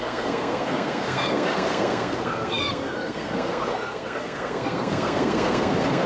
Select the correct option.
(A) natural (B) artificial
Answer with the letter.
B